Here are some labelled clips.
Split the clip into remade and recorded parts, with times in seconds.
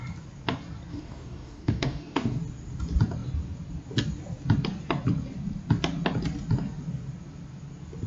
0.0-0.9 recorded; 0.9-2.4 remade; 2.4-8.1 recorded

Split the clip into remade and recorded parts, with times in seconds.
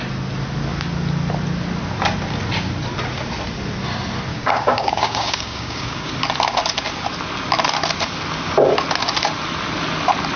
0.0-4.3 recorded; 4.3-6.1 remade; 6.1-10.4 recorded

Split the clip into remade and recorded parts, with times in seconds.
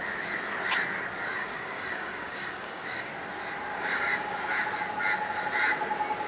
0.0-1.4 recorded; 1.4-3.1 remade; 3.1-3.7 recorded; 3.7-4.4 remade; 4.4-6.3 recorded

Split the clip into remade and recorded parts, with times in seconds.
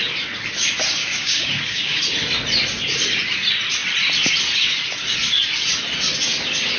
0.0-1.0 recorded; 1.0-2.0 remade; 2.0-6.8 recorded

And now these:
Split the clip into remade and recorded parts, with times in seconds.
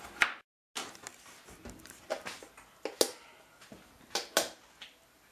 0.0-5.3 recorded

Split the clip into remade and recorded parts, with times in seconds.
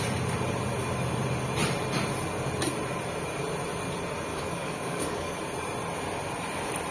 0.0-4.3 recorded; 4.3-5.4 remade; 5.4-6.9 recorded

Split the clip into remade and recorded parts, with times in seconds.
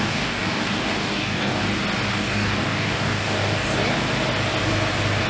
0.0-1.6 remade; 1.6-2.1 recorded; 2.1-3.7 remade; 3.7-5.3 recorded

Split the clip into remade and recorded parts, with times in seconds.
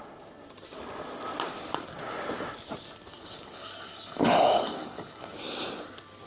0.0-3.1 recorded; 3.1-5.3 remade; 5.3-6.3 recorded